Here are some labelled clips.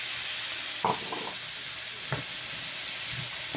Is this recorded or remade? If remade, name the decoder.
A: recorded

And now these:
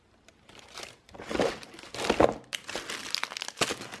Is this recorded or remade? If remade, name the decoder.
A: recorded